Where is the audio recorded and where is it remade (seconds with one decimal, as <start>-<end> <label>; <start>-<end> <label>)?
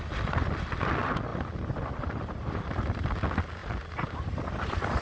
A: 0.0-3.6 recorded; 3.6-4.6 remade; 4.6-5.0 recorded